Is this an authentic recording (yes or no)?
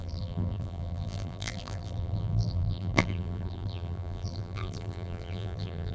no